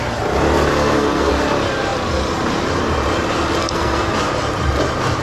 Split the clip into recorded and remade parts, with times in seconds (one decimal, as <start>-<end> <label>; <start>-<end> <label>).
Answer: 0.0-0.7 recorded; 0.7-1.3 remade; 1.3-3.6 recorded; 3.6-4.1 remade; 4.1-5.2 recorded

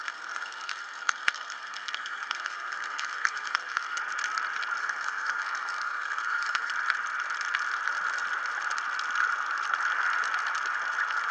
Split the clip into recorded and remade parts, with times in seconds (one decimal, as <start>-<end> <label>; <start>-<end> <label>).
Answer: 0.0-4.0 remade; 4.0-4.8 recorded; 4.8-6.7 remade; 6.7-11.3 recorded